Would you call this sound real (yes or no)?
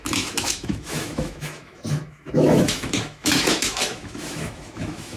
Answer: no